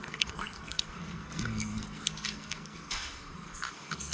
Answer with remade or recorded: remade